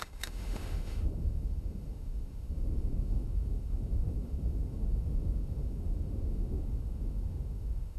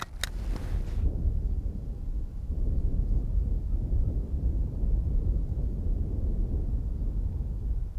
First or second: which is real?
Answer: second